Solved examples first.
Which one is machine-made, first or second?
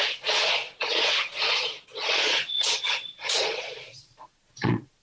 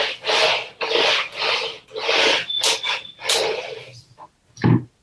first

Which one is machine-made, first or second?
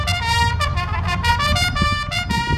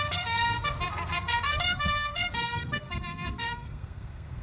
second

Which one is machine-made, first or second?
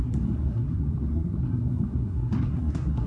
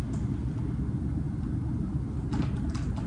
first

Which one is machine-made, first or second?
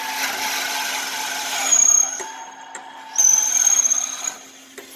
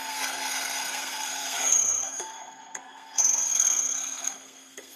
second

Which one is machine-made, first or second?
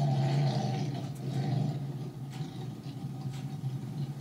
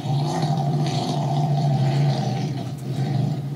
second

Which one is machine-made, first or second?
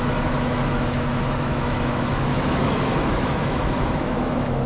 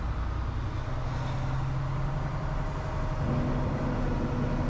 first